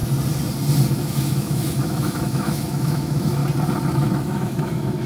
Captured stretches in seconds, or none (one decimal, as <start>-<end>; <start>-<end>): 0.0-0.9; 3.4-3.9